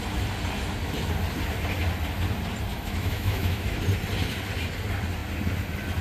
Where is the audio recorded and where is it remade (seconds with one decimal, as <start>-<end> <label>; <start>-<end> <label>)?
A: 0.0-2.7 recorded; 2.7-3.8 remade; 3.8-6.0 recorded